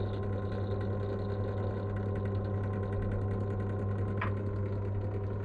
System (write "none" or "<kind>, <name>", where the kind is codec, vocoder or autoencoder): none